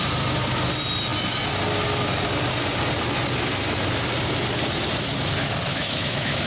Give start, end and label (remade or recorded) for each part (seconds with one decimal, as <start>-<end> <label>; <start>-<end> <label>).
0.0-5.7 recorded; 5.7-6.5 remade